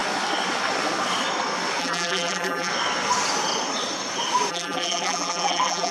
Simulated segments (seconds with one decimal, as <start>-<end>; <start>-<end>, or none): 1.8-2.7; 4.5-5.9